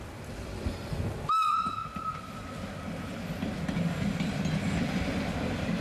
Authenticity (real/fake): real